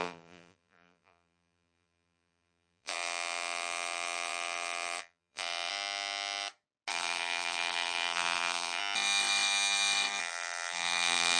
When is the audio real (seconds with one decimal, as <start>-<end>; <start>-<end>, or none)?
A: 5.7-6.9; 8.8-10.2